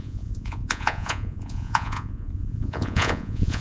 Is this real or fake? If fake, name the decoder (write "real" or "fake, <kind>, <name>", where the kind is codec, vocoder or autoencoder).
fake, vocoder, Vocos